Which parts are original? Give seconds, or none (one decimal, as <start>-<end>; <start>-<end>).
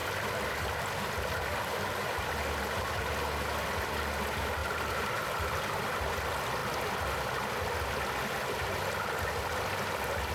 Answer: 0.0-4.6; 6.1-10.3